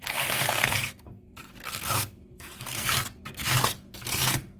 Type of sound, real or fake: fake